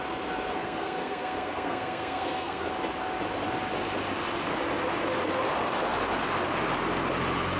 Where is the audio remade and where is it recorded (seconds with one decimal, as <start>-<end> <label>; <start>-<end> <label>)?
0.0-0.5 recorded; 0.5-2.7 remade; 2.7-7.6 recorded